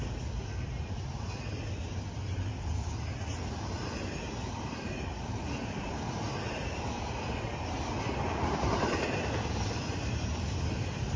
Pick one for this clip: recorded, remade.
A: recorded